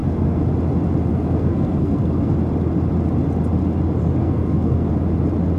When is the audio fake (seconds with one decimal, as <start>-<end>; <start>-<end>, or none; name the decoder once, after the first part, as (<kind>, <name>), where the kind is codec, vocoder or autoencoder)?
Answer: 0.0-0.5 (codec, SNAC); 1.1-2.3; 4.2-4.9